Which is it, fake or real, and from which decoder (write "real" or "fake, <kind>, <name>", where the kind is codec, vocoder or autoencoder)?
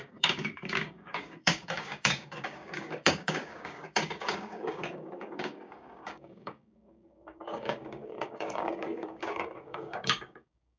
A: fake, codec, DAC